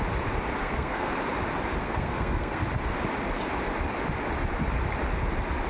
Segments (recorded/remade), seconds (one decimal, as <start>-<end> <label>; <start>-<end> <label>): 0.0-0.6 recorded; 0.6-1.1 remade; 1.1-1.8 recorded; 1.8-2.6 remade; 2.6-5.7 recorded